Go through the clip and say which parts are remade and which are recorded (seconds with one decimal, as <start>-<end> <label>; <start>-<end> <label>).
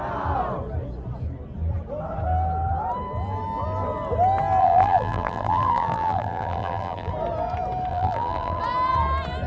0.0-4.6 recorded; 4.6-7.1 remade; 7.1-7.9 recorded; 7.9-8.6 remade; 8.6-9.5 recorded